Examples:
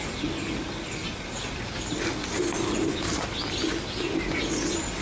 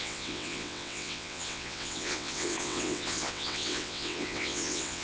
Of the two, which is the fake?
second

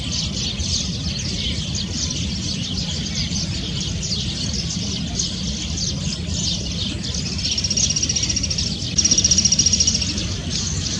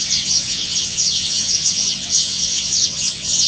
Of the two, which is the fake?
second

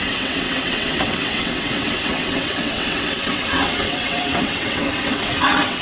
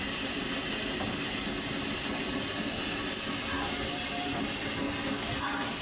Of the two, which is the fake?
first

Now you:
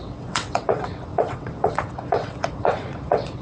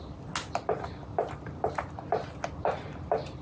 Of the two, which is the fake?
first